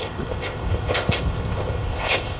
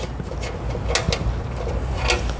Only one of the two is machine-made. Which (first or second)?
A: first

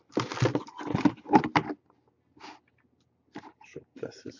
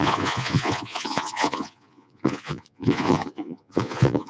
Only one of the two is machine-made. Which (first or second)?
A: second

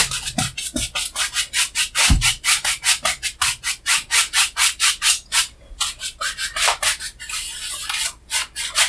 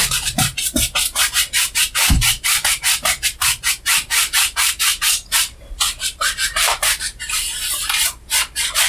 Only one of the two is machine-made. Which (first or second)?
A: second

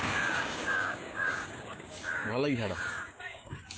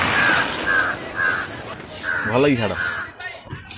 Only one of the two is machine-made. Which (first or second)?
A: first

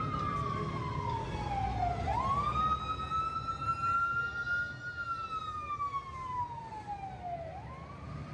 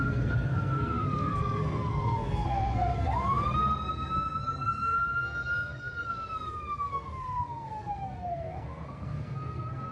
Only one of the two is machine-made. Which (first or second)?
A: second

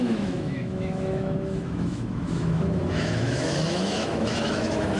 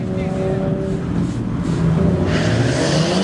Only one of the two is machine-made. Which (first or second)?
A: first